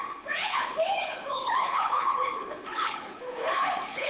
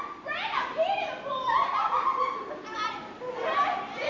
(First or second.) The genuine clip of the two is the second